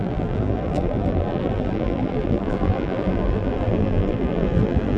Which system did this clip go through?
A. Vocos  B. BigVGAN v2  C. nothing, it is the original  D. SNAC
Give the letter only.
B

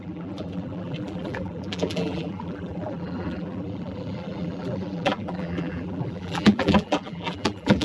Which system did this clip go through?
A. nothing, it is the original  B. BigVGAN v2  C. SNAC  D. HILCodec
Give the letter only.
B